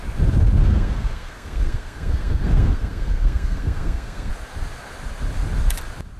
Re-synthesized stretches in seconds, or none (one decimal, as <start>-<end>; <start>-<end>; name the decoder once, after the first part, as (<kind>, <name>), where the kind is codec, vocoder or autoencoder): 0.6-4.3 (codec, SNAC)